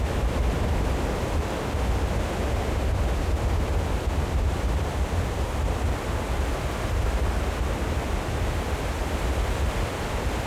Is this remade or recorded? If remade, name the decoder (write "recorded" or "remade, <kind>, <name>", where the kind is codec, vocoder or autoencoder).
recorded